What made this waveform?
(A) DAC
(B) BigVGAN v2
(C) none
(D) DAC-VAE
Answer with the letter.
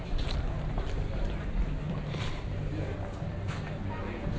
C